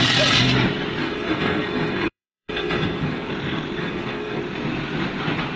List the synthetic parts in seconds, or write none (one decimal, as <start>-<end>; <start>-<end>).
1.0-3.3; 3.8-4.4